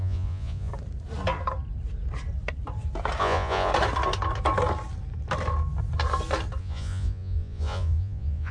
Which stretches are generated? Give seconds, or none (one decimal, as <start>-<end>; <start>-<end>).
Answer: 0.0-0.7; 3.2-3.7; 6.6-8.5